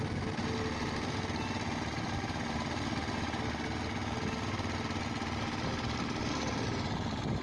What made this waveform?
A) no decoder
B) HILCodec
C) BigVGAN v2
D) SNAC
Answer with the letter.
A